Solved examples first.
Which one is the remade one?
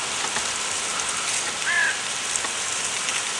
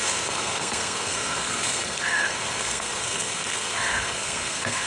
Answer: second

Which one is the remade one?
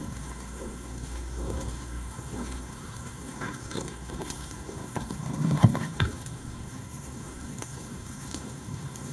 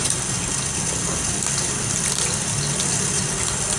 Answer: first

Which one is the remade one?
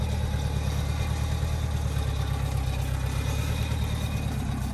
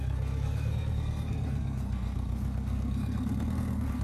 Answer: second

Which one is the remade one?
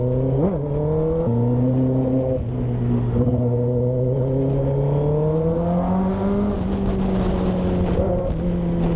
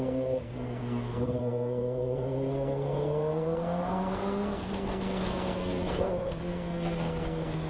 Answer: second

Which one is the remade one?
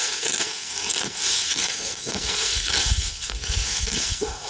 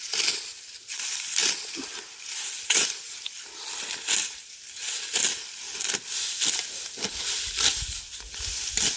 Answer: first